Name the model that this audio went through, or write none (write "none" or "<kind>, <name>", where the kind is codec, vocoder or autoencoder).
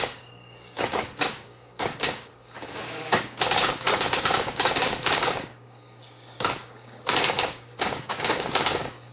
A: codec, DAC